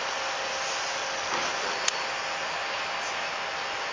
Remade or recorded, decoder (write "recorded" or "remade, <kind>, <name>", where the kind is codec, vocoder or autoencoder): recorded